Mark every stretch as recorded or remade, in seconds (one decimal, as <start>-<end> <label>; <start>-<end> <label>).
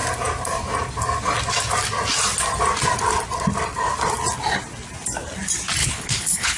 0.0-5.8 recorded; 5.8-6.6 remade